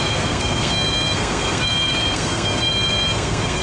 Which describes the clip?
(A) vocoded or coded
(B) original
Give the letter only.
A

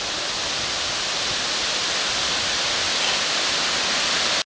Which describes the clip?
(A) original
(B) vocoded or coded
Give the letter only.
A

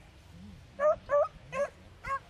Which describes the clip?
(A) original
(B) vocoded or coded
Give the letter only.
A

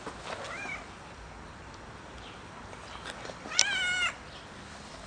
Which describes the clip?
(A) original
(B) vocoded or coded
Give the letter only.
A